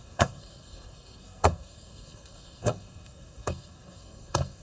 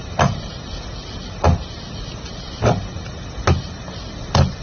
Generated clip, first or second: first